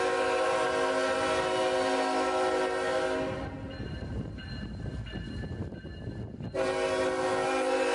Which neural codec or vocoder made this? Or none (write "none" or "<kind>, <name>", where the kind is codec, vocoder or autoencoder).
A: none